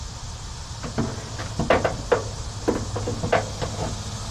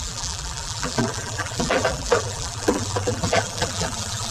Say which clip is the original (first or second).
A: first